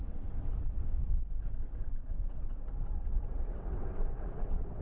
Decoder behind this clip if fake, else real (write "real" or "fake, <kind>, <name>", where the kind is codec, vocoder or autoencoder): fake, vocoder, WaveNeXt